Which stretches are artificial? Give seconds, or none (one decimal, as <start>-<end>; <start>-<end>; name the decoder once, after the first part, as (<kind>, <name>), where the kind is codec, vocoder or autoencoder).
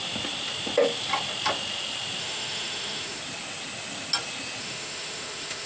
2.2-3.2 (autoencoder, DAC-VAE); 4.6-5.7